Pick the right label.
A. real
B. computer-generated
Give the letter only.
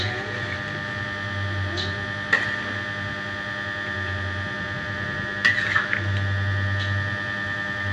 A